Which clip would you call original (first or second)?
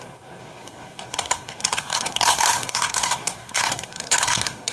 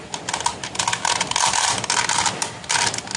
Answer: second